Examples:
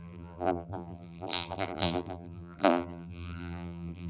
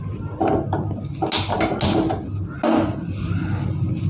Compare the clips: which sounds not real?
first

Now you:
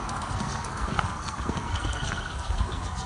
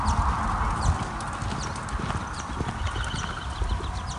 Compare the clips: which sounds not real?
first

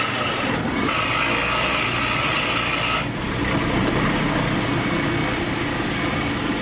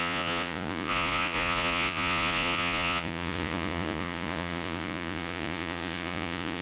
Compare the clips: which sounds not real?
second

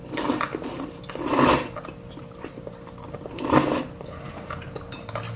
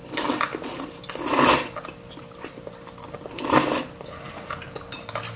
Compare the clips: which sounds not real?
first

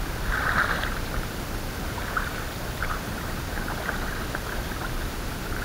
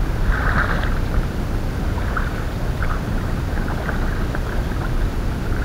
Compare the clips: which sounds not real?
first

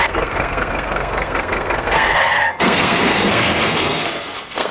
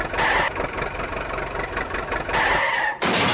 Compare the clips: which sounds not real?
first